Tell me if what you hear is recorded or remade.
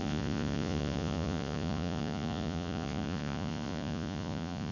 remade